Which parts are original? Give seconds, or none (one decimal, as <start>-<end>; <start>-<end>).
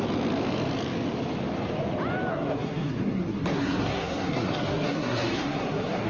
0.0-2.3